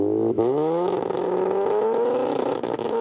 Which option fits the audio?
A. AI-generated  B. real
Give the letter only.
A